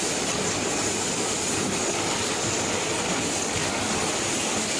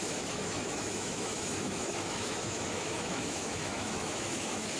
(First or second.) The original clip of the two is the first